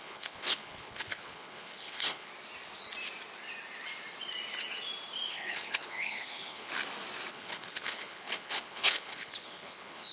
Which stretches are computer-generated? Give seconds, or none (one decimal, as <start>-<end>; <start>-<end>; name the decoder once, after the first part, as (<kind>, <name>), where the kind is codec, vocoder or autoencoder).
0.0-2.3 (codec, HILCodec); 5.3-6.7; 7.3-10.1